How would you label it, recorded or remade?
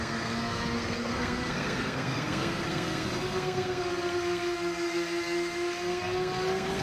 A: remade